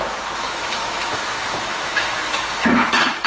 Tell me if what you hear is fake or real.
fake